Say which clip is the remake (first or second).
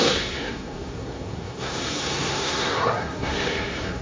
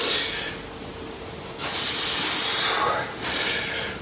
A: first